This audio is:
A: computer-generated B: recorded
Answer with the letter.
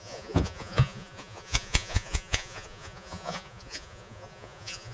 A